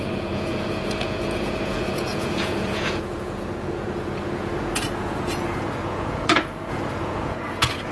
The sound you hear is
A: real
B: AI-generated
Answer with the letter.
B